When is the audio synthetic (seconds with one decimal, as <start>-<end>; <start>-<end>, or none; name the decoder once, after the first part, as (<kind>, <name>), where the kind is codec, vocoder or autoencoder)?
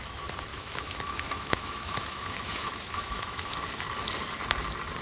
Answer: 0.5-3.5 (autoencoder, DAC-VAE)